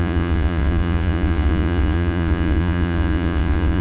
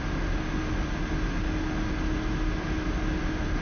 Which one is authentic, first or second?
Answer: second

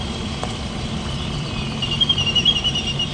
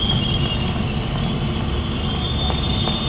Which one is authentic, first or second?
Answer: second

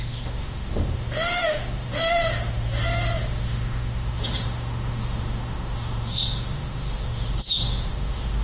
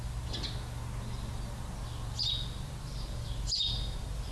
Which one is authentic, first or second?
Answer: second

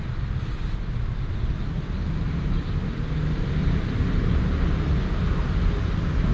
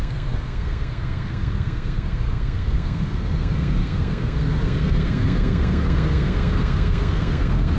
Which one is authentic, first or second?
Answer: first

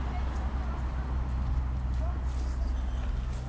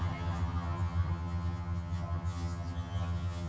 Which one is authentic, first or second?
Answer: first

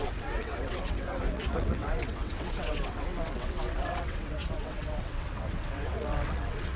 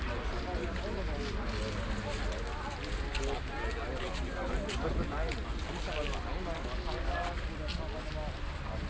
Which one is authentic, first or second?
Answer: second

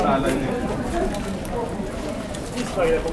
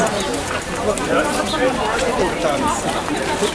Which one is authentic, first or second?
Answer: first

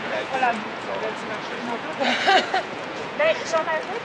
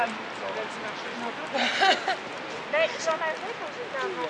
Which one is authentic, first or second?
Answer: second